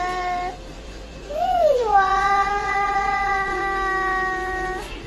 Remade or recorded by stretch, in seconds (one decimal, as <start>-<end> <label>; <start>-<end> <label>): 0.0-0.7 recorded; 0.7-3.6 remade; 3.6-5.1 recorded